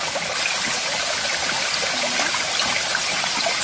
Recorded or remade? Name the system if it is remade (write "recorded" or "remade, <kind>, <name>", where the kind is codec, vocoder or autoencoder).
recorded